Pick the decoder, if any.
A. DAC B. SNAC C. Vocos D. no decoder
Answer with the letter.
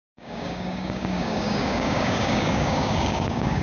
A